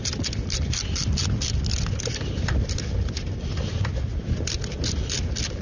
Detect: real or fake real